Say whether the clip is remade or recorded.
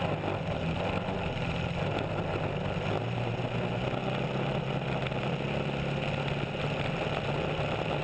recorded